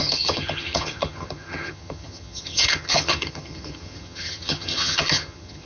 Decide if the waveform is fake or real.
fake